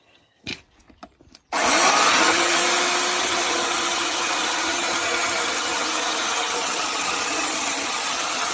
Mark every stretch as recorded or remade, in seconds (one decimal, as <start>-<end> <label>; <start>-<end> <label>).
0.0-0.5 remade; 0.5-2.1 recorded; 2.1-2.6 remade; 2.6-3.2 recorded; 3.2-8.5 remade